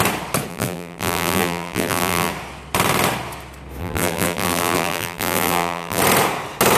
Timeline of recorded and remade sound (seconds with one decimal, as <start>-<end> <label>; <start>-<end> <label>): 0.0-0.5 recorded; 0.5-2.3 remade; 2.3-3.8 recorded; 3.8-6.0 remade; 6.0-6.8 recorded

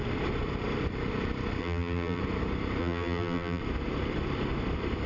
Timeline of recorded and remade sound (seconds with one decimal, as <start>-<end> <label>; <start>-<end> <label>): 0.0-1.6 recorded; 1.6-2.2 remade; 2.2-2.8 recorded; 2.8-3.6 remade; 3.6-5.1 recorded

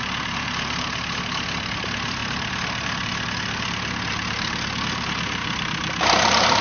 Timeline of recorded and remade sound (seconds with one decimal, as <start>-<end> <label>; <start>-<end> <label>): 0.0-5.4 recorded; 5.4-6.6 remade

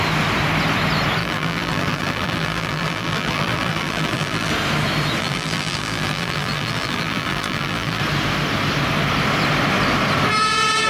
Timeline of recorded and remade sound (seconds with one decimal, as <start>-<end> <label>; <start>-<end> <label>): 0.0-1.2 recorded; 1.2-4.5 remade; 4.5-5.2 recorded; 5.2-8.0 remade; 8.0-10.9 recorded

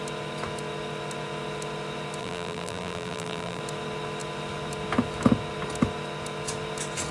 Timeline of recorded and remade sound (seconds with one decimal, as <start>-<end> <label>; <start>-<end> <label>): 0.0-2.2 recorded; 2.2-3.6 remade; 3.6-7.1 recorded

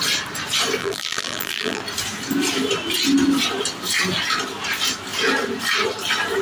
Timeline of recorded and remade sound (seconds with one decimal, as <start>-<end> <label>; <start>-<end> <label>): 0.0-0.8 recorded; 0.8-1.8 remade; 1.8-6.4 recorded